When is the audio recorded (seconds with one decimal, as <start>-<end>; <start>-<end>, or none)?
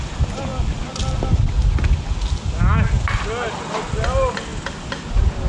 0.0-5.5